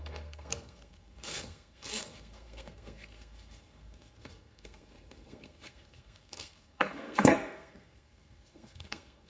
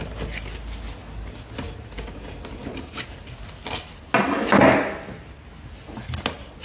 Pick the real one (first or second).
second